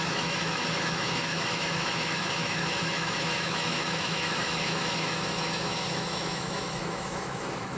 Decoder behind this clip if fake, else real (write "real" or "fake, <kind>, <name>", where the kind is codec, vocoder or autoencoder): fake, autoencoder, DAC-VAE